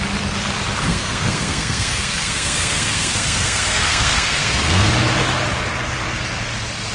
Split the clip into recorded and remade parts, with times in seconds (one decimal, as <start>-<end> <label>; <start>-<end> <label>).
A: 0.0-0.9 recorded; 0.9-4.9 remade; 4.9-6.9 recorded